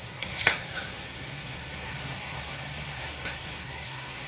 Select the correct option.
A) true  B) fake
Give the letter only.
B